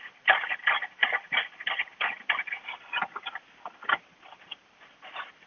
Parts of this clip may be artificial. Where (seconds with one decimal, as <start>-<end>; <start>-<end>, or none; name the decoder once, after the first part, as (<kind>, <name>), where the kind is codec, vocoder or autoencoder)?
none